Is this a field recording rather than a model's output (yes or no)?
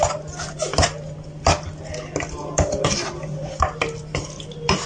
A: yes